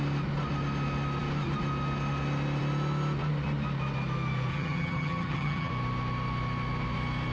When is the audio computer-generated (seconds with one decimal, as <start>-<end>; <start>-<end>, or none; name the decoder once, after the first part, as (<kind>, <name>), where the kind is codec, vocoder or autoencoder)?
4.5-5.7 (vocoder, HiFi-GAN)